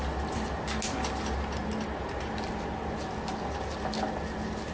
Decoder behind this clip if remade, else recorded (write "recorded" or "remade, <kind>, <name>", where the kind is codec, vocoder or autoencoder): recorded